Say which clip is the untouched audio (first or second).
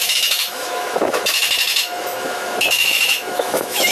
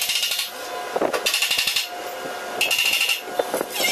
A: second